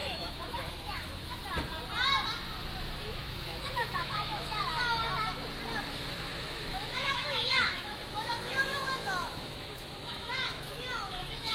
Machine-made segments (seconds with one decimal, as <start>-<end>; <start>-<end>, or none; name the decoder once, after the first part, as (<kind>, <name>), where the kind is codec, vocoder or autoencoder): 0.0-1.4 (autoencoder, DAC-VAE); 2.8-4.8; 5.9-11.5